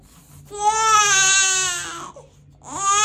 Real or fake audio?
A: real